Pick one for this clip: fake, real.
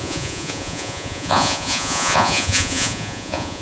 fake